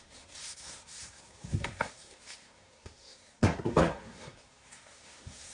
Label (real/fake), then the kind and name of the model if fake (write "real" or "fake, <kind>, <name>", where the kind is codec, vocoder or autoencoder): fake, codec, SNAC